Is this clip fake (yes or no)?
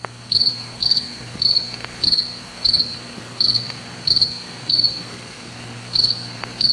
yes